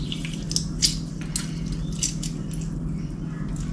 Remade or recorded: recorded